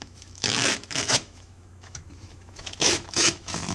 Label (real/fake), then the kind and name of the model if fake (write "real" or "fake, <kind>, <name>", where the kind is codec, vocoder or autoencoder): fake, autoencoder, DAC-VAE